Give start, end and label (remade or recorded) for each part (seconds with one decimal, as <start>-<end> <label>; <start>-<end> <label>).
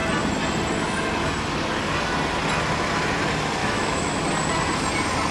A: 0.0-3.6 recorded; 3.6-4.2 remade; 4.2-5.3 recorded